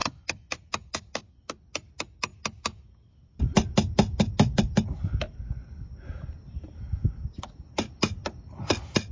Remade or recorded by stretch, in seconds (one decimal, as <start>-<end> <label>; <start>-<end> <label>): 0.0-9.1 recorded